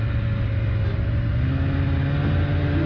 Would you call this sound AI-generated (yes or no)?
no